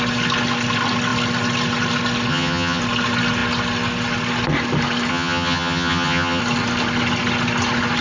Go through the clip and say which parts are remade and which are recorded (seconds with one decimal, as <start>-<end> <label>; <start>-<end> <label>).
0.0-2.3 recorded; 2.3-2.8 remade; 2.8-5.1 recorded; 5.1-6.4 remade; 6.4-8.0 recorded